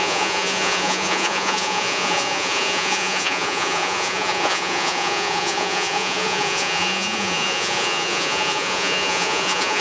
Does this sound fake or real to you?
fake